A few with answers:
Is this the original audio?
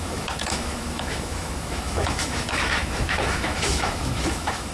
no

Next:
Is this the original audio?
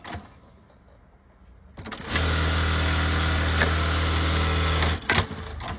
yes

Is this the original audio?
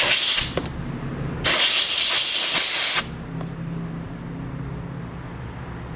yes